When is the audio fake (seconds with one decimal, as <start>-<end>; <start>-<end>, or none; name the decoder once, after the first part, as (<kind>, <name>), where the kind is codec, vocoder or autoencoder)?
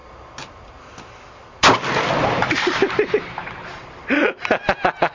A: none